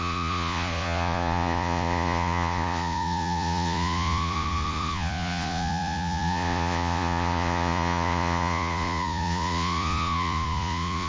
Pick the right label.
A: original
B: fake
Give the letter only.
B